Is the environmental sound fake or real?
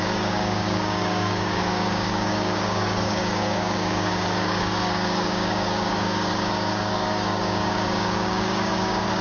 fake